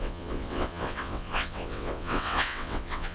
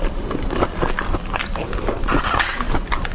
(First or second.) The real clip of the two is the second